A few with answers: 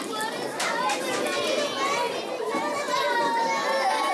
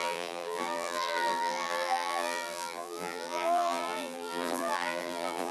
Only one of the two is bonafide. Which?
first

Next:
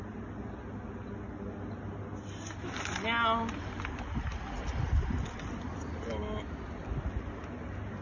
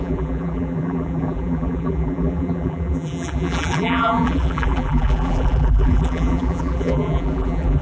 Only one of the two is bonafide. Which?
first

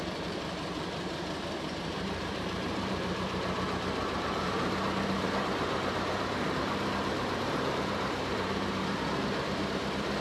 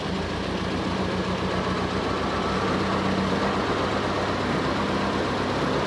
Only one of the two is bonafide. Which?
second